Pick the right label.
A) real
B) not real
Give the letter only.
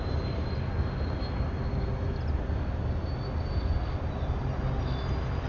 A